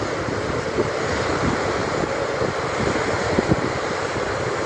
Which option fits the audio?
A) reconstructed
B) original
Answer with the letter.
B